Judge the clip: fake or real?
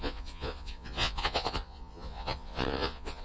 fake